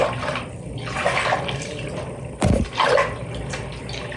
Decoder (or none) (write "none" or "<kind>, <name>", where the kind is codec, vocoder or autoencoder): none